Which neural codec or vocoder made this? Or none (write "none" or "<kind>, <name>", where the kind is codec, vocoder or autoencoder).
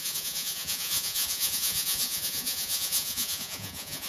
vocoder, Vocos